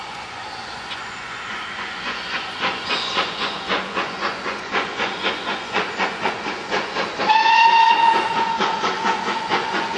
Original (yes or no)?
no